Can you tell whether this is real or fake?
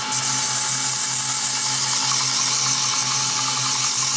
real